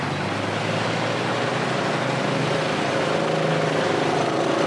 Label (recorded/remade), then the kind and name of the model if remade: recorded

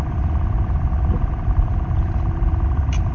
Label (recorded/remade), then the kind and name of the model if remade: remade, vocoder, BigVGAN v2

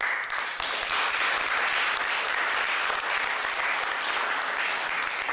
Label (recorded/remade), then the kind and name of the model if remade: recorded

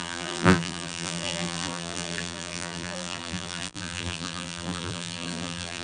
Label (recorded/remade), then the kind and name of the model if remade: remade, vocoder, BigVGAN v2